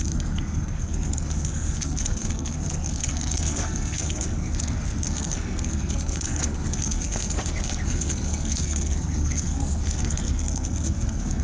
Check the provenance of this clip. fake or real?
fake